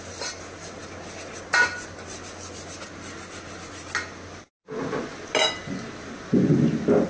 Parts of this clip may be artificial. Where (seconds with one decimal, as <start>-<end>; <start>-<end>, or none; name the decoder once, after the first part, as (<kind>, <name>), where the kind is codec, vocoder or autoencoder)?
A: none